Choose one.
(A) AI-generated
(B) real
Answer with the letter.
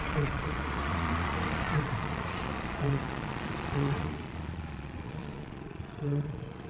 A